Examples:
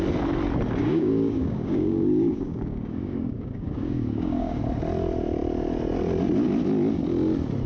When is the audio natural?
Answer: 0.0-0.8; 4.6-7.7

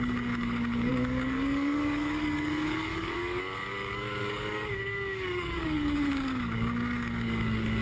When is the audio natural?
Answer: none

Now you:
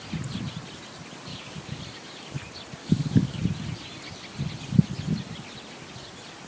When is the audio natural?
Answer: 0.0-1.3; 1.8-2.8; 3.4-6.5

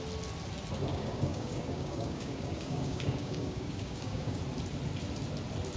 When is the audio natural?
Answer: 0.0-0.9; 4.4-5.8

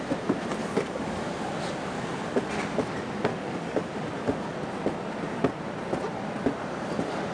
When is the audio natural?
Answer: 0.0-0.6; 1.3-3.3; 3.9-7.3